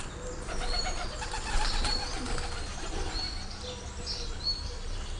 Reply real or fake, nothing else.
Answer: real